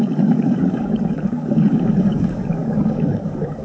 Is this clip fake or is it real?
fake